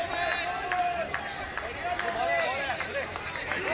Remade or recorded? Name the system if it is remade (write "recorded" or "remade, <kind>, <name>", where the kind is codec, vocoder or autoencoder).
recorded